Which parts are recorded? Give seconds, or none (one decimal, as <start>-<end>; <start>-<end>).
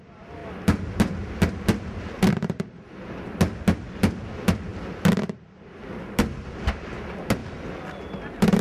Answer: 0.0-8.6